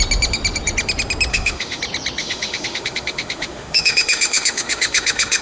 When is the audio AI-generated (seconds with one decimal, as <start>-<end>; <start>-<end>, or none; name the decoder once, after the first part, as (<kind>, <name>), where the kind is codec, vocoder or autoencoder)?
1.3-1.8 (autoencoder, DAC-VAE); 2.2-5.4